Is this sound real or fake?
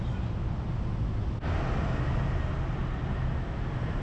real